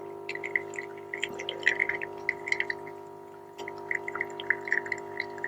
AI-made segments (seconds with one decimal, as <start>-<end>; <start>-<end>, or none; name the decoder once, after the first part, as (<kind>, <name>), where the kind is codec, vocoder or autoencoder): none